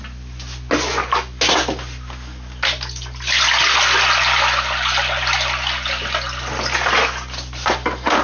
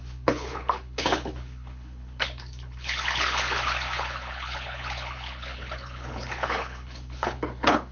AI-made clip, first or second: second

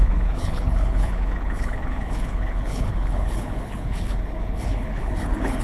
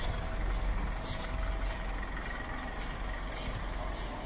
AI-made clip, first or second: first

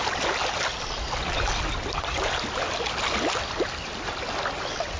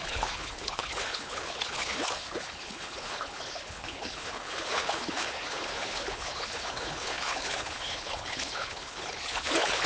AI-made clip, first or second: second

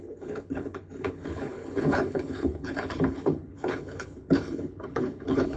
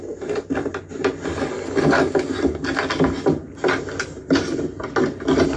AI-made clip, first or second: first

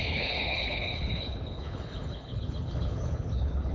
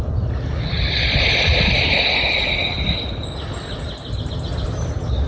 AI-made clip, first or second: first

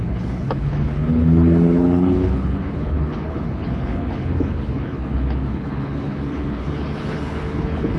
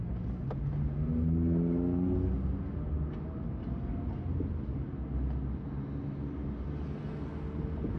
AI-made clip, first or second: first